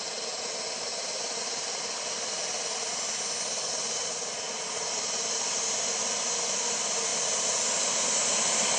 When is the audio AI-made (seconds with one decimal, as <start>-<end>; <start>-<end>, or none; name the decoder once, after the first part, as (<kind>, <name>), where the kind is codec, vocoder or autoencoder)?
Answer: none

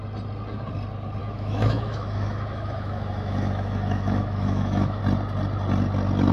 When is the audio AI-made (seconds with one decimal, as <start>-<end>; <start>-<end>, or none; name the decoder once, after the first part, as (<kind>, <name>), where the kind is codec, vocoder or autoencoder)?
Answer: 1.2-5.0 (autoencoder, DAC-VAE)

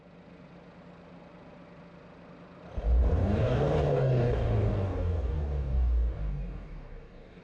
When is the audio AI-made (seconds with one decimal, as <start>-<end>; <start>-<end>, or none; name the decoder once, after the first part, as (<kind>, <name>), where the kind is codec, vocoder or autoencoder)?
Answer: 3.2-7.4 (codec, DAC)

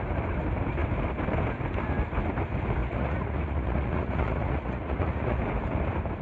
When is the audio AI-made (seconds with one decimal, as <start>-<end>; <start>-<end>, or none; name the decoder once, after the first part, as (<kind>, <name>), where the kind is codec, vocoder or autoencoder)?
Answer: 2.8-5.4 (vocoder, Vocos)

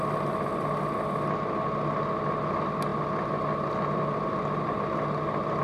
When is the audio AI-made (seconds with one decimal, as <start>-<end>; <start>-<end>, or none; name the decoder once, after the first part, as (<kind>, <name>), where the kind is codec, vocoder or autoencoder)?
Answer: none

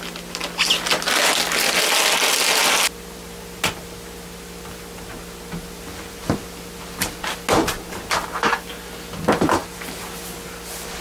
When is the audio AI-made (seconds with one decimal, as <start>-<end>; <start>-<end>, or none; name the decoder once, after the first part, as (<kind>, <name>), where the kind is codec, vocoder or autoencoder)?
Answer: none